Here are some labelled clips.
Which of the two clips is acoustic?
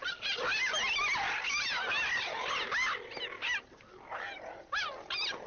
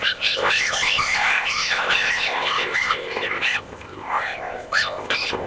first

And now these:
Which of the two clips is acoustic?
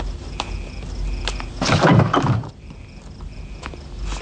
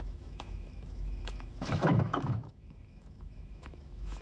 first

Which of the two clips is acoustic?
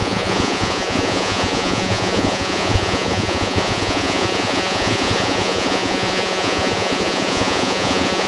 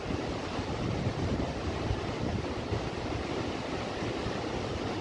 second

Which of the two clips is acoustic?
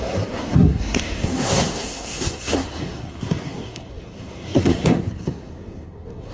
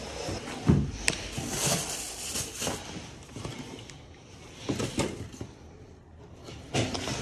second